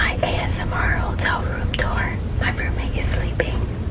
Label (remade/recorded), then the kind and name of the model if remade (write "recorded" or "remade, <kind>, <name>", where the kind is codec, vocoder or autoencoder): recorded